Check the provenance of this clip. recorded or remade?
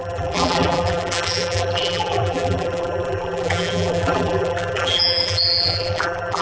remade